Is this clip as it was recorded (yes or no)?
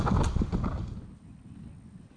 yes